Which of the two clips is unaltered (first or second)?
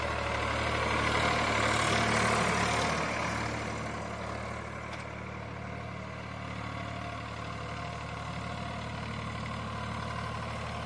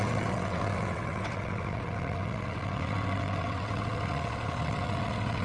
first